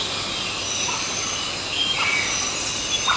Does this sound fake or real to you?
real